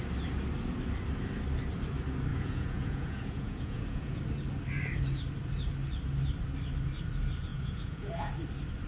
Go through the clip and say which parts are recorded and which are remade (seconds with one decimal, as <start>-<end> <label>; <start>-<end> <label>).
0.0-2.3 recorded; 2.3-4.2 remade; 4.2-7.5 recorded; 7.5-8.3 remade; 8.3-8.9 recorded